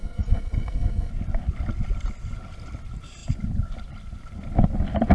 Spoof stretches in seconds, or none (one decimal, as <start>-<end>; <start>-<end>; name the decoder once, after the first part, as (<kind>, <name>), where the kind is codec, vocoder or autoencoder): 0.0-1.1 (codec, SNAC)

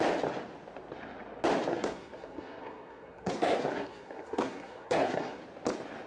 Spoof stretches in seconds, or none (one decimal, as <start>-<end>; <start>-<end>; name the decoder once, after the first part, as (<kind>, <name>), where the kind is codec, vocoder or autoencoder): 1.7-5.4 (codec, SNAC)

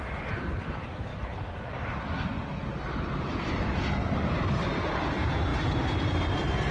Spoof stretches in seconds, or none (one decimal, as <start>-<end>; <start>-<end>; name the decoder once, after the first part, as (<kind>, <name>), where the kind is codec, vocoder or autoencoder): none